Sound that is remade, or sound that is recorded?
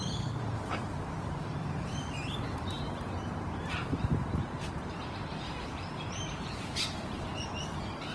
remade